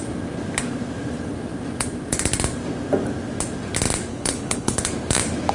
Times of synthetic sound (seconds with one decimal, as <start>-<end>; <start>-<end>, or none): 4.1-4.8